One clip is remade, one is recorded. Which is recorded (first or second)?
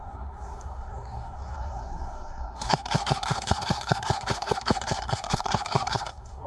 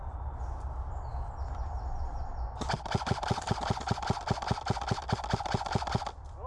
second